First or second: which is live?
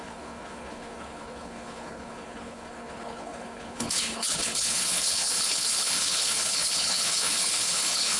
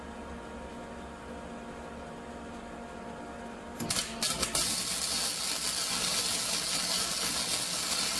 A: second